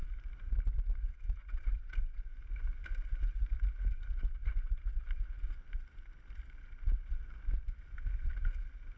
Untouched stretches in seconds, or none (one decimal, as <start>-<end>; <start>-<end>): 0.0-9.0